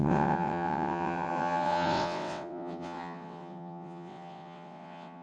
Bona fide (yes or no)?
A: no